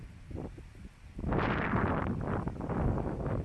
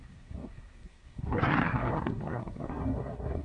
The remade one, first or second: second